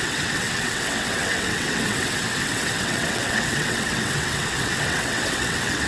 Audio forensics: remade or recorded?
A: remade